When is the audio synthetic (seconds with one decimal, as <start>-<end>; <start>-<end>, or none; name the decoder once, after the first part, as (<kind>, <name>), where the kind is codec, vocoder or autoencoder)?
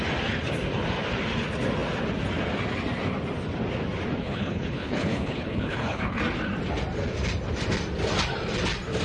4.2-6.2 (codec, HILCodec)